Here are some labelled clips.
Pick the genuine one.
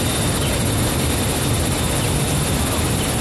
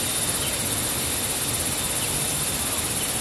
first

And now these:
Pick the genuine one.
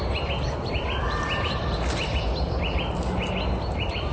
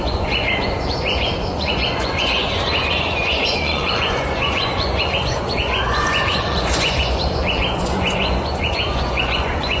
first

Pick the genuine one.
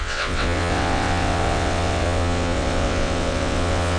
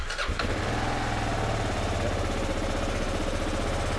second